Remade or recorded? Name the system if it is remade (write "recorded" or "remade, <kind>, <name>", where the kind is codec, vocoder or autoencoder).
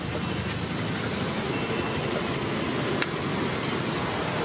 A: recorded